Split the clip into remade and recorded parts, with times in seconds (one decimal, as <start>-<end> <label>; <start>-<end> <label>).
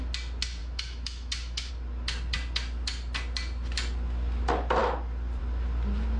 0.0-0.6 recorded; 0.6-1.7 remade; 1.7-6.2 recorded